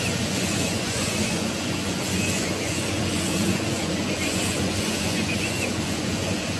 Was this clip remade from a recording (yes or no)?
yes